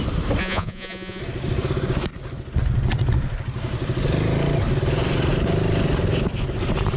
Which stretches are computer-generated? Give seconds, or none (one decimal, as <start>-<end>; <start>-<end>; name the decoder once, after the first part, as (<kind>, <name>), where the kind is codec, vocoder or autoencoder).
0.4-1.2 (vocoder, Vocos)